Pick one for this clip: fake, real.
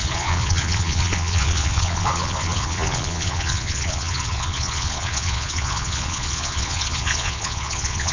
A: fake